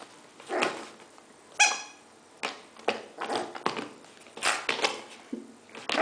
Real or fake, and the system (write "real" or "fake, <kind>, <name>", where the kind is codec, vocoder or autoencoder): real